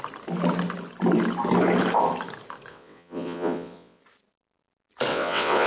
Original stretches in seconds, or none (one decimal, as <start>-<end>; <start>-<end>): 0.0-2.7; 4.0-5.1